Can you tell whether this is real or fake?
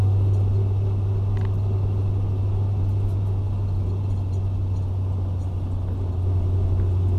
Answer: real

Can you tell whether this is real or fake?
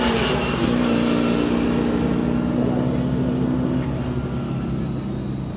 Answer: real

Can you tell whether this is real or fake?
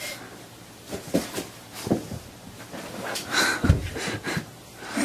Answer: fake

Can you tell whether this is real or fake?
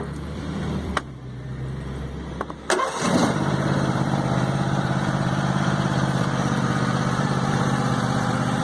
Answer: fake